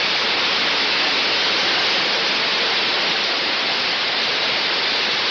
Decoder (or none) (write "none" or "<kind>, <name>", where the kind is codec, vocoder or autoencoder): none